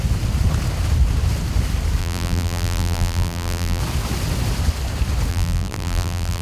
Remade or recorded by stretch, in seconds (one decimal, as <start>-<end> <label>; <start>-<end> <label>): 0.0-2.0 recorded; 2.0-3.8 remade; 3.8-5.3 recorded; 5.3-6.4 remade